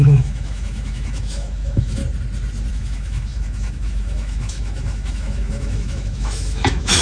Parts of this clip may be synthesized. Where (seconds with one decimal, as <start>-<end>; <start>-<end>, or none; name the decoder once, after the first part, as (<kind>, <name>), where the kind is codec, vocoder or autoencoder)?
0.0-2.0 (autoencoder, DAC-VAE); 2.7-7.0